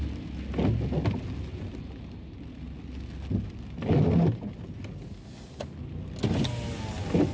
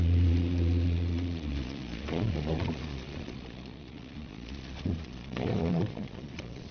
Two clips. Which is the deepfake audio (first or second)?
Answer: second